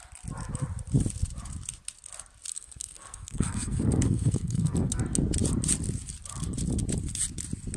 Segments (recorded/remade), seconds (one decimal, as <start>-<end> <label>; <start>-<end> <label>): 0.0-2.5 recorded; 2.5-5.0 remade; 5.0-7.8 recorded